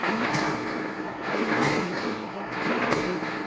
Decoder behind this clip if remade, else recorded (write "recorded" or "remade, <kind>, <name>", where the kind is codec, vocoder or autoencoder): remade, codec, SNAC